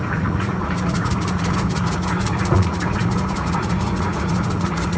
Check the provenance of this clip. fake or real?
fake